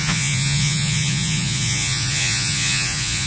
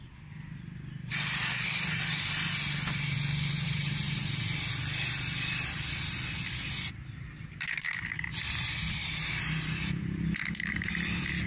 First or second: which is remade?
first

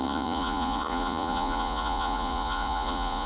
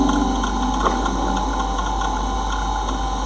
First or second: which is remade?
first